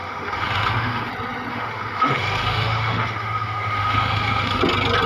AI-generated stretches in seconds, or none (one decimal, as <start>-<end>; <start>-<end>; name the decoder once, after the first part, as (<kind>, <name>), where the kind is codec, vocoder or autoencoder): 0.0-1.1 (autoencoder, DAC-VAE); 1.5-4.6